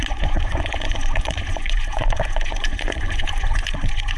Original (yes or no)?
no